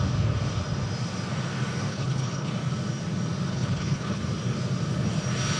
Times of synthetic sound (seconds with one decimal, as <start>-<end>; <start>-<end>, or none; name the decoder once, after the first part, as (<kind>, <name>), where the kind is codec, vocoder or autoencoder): 1.9-2.5 (codec, HILCodec); 3.5-4.2